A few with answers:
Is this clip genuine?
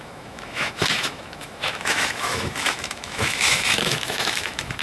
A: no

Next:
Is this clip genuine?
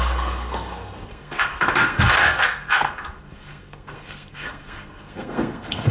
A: no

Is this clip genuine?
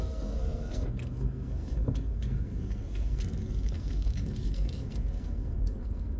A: no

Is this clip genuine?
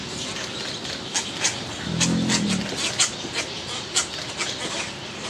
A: yes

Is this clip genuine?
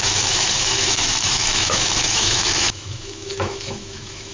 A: no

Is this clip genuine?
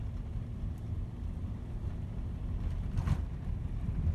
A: no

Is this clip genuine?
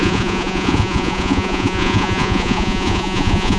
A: no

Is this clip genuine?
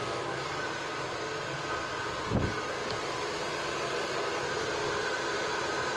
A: yes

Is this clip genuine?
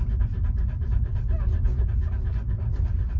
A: yes